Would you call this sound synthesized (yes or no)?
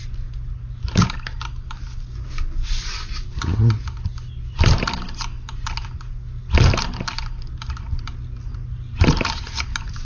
no